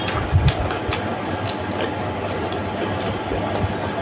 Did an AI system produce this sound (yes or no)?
no